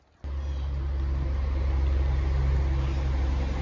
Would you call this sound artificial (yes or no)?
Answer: no